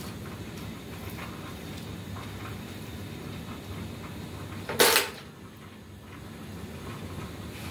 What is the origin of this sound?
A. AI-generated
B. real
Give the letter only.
B